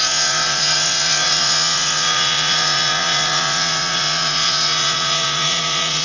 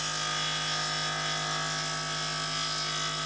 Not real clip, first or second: first